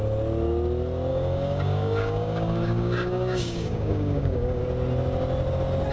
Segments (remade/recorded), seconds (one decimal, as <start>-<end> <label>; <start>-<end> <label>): 0.0-1.1 recorded; 1.1-4.6 remade; 4.6-5.9 recorded